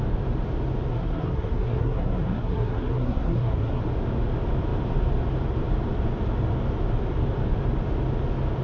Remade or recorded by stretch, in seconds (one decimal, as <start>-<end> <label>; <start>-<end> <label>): 0.0-0.9 recorded; 0.9-3.8 remade; 3.8-8.6 recorded